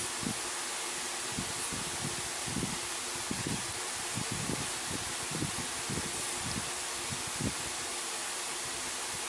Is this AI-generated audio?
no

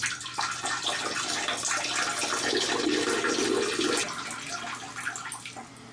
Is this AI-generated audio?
no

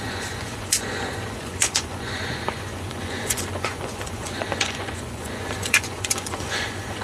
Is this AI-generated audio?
yes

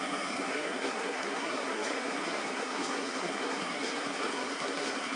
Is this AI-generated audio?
yes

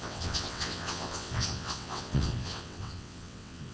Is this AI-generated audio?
yes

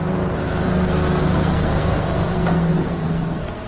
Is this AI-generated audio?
yes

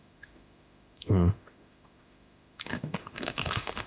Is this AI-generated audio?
yes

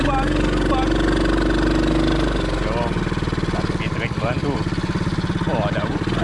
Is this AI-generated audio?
no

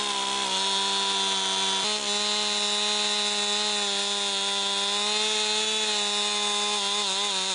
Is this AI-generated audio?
no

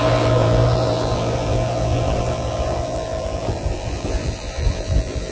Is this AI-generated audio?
yes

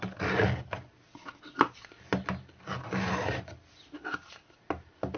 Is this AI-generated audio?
no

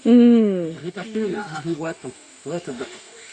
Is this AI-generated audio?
yes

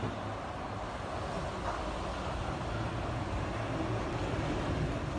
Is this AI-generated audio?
no